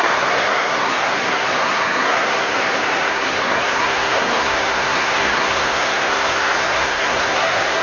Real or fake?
fake